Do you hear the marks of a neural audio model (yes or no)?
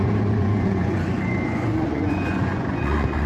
yes